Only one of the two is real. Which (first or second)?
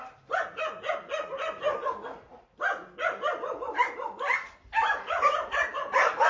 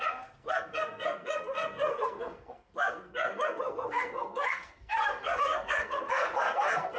first